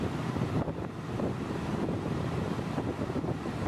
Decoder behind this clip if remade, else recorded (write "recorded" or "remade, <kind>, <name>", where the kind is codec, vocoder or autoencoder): remade, vocoder, BigVGAN v2